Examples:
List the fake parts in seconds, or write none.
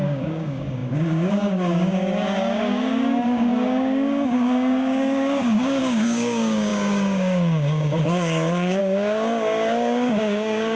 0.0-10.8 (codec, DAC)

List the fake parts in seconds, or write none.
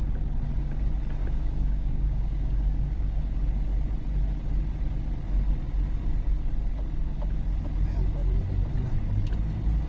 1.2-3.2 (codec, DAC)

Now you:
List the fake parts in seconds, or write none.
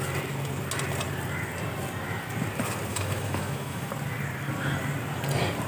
2.9-3.9 (autoencoder, DAC-VAE)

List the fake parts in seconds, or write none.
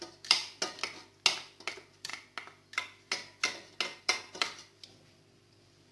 0.0-0.4 (vocoder, BigVGAN v2); 1.7-2.1; 4.0-5.9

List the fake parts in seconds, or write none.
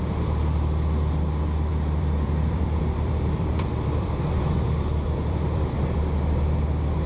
1.7-6.0 (vocoder, BigVGAN v2)